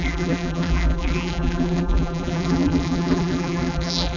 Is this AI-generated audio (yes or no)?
yes